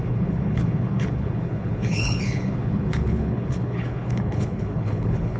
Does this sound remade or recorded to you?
remade